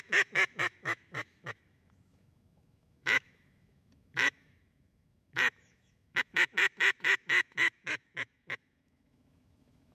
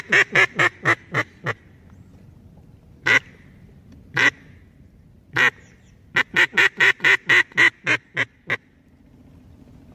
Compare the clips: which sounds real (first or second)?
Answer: second